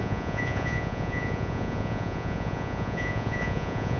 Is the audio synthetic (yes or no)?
yes